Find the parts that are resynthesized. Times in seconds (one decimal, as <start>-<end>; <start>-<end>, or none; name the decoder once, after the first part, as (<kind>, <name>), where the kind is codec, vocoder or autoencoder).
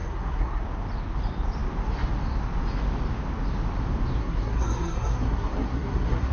0.0-0.6 (codec, SNAC); 4.2-6.3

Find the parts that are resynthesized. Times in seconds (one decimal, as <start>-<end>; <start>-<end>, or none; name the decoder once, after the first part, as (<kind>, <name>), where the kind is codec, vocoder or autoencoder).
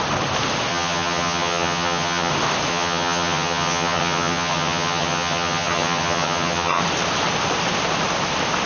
0.7-2.3 (vocoder, HiFi-GAN); 2.7-6.8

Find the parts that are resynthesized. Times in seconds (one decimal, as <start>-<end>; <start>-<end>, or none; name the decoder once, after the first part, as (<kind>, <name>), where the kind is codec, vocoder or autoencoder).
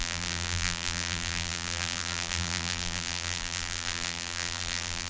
0.0-5.1 (vocoder, BigVGAN v2)